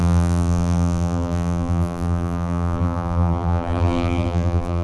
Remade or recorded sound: remade